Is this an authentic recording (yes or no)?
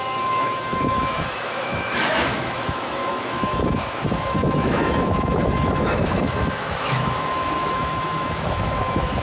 no